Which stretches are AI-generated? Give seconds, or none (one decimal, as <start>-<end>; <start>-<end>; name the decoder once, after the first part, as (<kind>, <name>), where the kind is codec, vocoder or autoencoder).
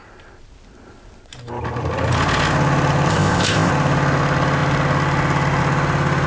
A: 3.1-3.7 (codec, ZipCodec)